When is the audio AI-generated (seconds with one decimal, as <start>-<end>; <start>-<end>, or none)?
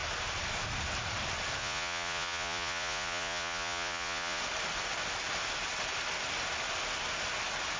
1.6-4.4